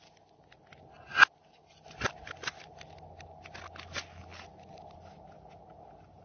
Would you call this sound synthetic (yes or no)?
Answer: no